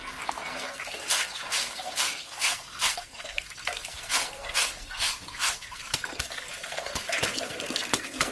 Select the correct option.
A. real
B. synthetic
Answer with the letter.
B